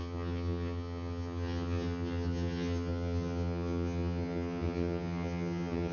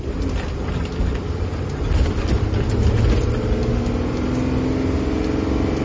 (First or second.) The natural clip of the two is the second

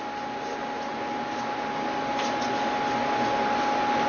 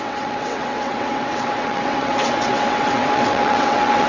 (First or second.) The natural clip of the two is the first